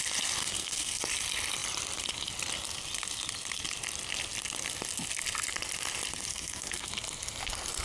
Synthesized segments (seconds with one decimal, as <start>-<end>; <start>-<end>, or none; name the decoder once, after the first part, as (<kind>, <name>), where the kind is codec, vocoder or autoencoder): 0.4-1.0 (codec, SNAC); 6.3-6.9